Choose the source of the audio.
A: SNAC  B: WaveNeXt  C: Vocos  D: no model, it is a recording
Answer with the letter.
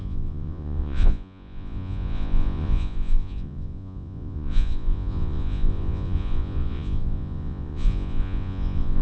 C